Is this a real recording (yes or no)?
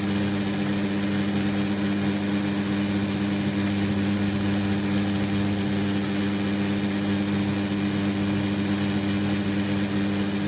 yes